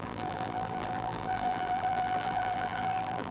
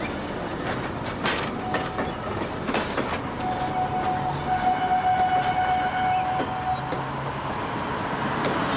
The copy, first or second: first